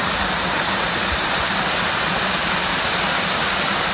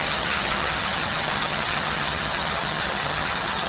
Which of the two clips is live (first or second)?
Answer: first